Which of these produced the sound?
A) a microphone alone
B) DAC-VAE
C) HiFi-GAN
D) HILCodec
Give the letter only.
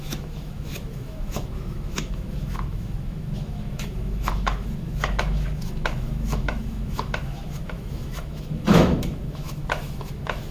B